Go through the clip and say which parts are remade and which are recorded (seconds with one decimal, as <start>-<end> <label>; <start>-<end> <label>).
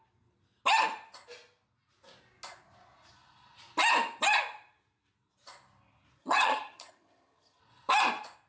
0.0-6.2 recorded; 6.2-7.6 remade; 7.6-8.5 recorded